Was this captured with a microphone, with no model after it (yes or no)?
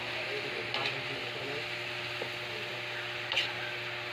yes